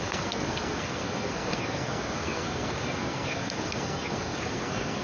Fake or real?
fake